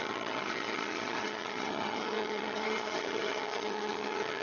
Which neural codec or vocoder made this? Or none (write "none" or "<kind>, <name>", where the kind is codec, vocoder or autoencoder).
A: vocoder, HiFi-GAN